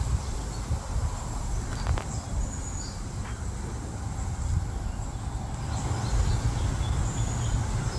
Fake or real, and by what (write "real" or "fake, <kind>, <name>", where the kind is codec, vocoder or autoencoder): real